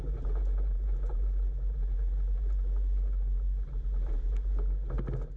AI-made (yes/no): no